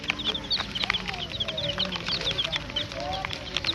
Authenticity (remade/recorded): recorded